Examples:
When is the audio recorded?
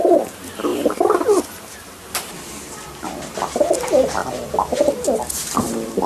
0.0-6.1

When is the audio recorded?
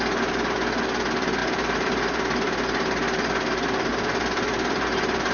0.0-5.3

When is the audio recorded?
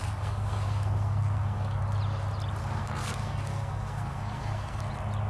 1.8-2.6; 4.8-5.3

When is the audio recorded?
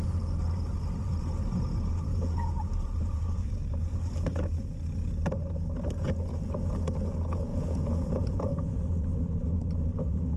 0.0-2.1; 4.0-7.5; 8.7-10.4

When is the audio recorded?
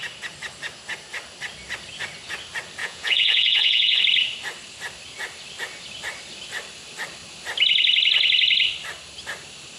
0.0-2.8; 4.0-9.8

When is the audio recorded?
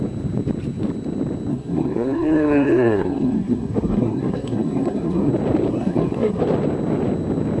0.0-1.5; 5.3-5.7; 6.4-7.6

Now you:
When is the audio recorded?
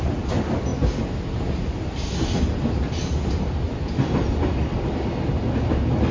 0.0-6.1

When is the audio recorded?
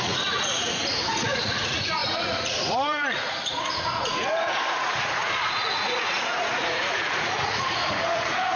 none